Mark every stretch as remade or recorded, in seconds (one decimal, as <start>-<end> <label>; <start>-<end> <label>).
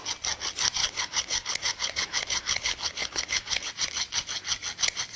0.0-0.8 recorded; 0.8-3.7 remade; 3.7-5.2 recorded